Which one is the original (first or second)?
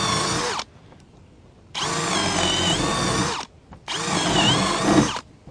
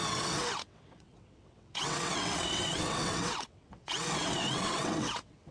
first